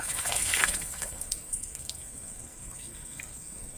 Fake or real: fake